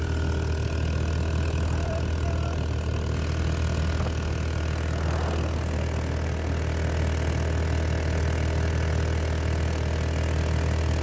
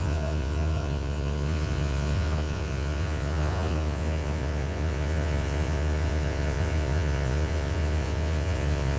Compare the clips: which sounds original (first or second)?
first